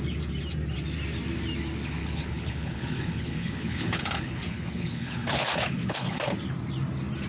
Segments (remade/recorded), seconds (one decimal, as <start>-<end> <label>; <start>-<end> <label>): 0.0-2.0 recorded; 2.0-6.4 remade; 6.4-7.3 recorded